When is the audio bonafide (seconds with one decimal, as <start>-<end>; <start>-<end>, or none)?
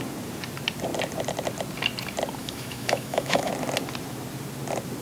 0.0-2.4; 3.5-5.0